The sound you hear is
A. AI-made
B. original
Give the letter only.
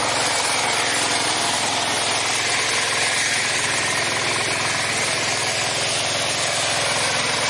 B